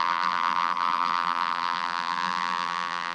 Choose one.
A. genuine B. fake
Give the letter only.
B